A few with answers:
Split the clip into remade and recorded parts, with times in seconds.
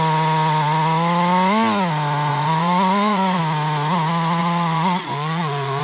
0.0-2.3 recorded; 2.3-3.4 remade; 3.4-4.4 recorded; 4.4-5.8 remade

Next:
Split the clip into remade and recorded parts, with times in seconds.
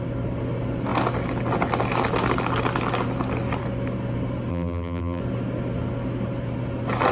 0.0-4.5 recorded; 4.5-5.2 remade; 5.2-7.1 recorded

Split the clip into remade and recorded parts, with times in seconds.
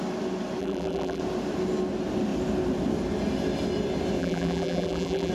0.0-0.6 recorded; 0.6-1.2 remade; 1.2-4.2 recorded; 4.2-5.3 remade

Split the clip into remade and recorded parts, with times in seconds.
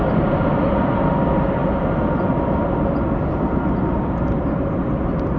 0.0-5.4 recorded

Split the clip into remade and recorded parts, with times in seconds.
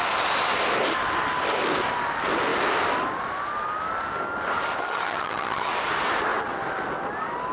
0.0-4.8 recorded; 4.8-5.7 remade; 5.7-7.5 recorded